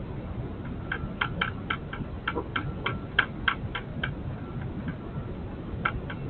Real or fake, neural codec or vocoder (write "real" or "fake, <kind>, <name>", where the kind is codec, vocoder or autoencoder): real